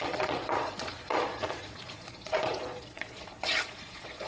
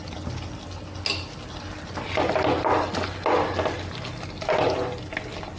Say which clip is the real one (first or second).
second